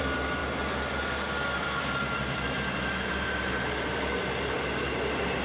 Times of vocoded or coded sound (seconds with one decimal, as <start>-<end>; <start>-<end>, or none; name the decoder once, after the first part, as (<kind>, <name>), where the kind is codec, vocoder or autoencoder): none